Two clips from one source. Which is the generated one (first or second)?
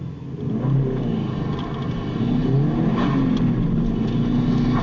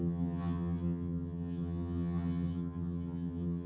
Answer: second